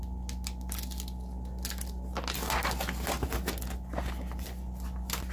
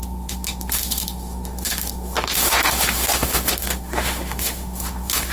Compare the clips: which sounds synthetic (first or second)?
second